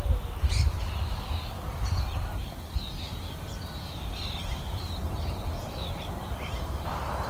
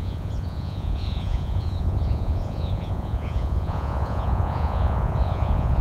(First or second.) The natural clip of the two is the first